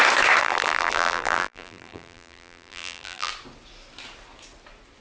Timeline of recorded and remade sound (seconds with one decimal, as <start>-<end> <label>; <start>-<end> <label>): 0.0-0.4 recorded; 0.4-3.3 remade; 3.3-5.0 recorded